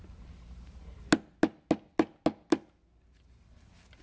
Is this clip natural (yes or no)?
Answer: yes